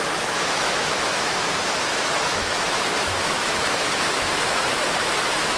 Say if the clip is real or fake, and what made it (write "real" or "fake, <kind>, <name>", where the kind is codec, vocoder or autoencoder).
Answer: fake, autoencoder, DAC-VAE